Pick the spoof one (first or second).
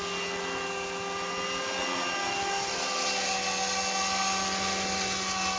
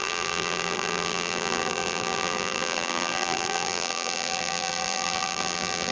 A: second